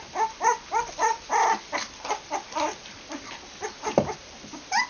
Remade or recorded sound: remade